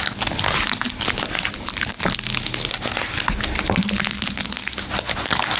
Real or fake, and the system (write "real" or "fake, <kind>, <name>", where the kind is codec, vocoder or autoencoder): real